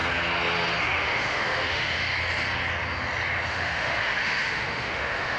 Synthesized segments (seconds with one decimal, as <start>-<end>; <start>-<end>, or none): 0.8-2.1; 3.5-5.4